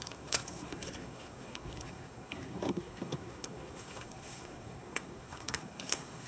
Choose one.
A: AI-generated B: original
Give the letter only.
A